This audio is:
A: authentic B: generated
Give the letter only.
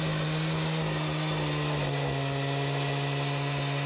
A